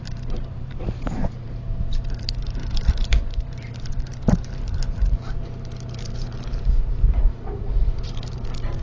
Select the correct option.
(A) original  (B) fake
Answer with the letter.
B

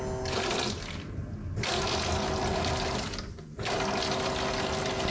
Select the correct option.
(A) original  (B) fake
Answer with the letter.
A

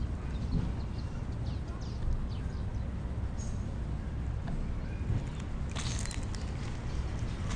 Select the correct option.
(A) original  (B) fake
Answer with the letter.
A